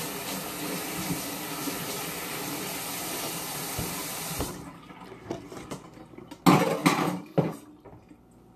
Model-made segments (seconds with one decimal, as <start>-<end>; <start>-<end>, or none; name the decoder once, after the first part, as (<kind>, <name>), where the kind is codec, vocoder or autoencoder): none